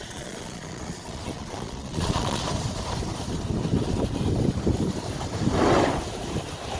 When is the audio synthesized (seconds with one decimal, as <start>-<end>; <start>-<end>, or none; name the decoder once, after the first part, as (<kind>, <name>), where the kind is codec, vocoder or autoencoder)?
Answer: 0.0-2.4 (vocoder, Vocos)